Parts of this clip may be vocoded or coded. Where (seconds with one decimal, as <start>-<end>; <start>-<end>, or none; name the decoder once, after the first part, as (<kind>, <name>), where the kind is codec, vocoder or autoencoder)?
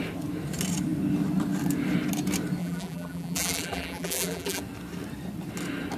2.6-4.6 (vocoder, BigVGAN v2)